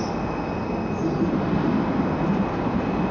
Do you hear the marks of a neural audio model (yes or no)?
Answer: no